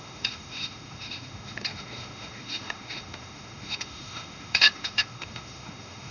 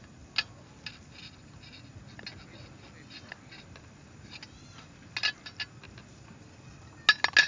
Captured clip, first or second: second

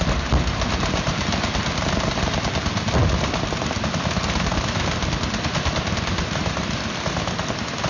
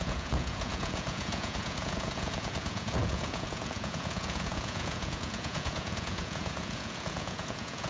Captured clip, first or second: first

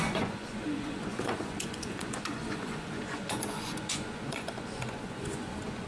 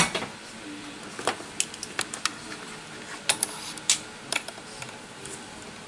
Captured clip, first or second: second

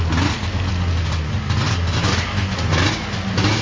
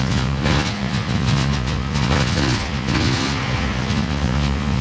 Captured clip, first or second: first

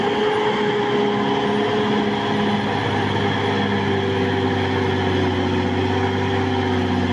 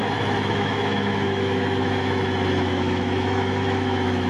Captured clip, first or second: first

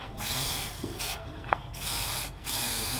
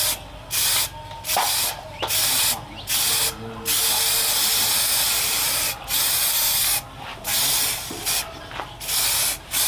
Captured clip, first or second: second